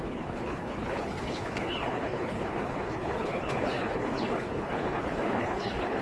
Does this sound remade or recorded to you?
remade